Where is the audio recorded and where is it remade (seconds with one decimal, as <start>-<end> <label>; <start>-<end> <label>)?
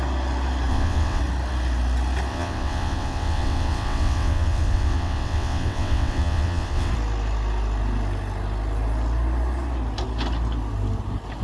0.0-0.7 recorded; 0.7-1.2 remade; 1.2-2.3 recorded; 2.3-6.9 remade; 6.9-11.4 recorded